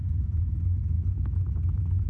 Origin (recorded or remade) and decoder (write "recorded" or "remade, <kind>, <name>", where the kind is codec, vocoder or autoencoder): remade, vocoder, Vocos